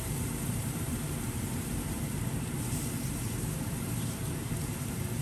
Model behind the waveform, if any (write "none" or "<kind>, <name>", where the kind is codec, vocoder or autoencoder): vocoder, BigVGAN v2